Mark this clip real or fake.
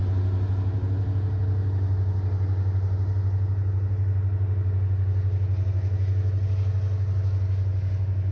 real